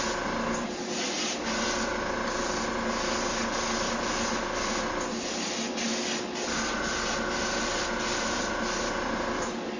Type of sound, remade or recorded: recorded